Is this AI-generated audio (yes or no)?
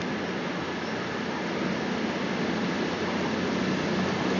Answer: no